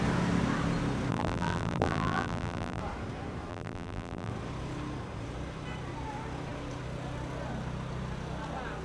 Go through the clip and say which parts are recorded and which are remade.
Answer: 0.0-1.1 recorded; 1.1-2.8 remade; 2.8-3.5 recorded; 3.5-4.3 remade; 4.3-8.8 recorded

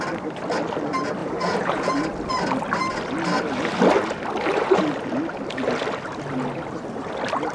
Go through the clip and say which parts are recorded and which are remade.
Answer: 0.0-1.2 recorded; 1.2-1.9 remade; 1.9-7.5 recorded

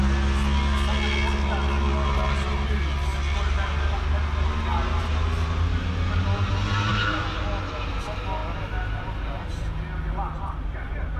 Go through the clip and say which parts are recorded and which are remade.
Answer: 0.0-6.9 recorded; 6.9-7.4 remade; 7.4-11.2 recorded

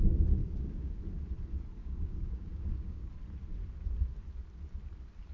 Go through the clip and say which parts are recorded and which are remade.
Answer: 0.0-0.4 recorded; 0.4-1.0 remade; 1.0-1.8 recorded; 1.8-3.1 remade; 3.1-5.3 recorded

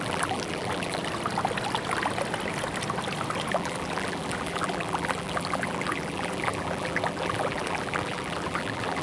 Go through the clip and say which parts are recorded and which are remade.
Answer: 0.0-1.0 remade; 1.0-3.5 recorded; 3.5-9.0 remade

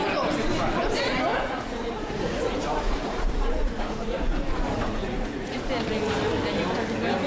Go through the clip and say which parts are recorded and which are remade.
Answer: 0.0-1.3 recorded; 1.3-5.7 remade; 5.7-7.3 recorded

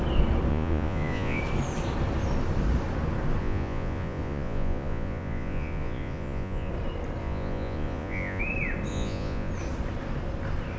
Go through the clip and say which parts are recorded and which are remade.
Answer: 0.0-0.5 recorded; 0.5-1.4 remade; 1.4-3.4 recorded; 3.4-6.7 remade; 6.7-7.2 recorded; 7.2-8.4 remade; 8.4-8.9 recorded; 8.9-9.5 remade; 9.5-10.8 recorded

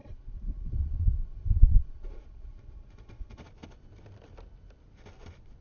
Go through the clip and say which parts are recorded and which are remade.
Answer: 0.0-3.4 remade; 3.4-5.6 recorded